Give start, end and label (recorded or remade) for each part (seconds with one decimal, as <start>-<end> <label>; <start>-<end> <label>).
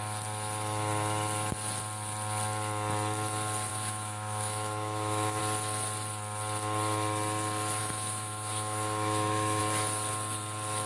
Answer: 0.0-3.7 recorded; 3.7-5.4 remade; 5.4-7.8 recorded; 7.8-9.6 remade; 9.6-10.9 recorded